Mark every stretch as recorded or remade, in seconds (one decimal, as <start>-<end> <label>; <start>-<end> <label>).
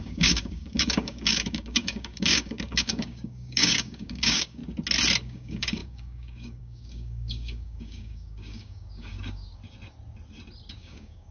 0.0-4.6 remade; 4.6-5.2 recorded; 5.2-9.6 remade; 9.6-10.7 recorded; 10.7-11.3 remade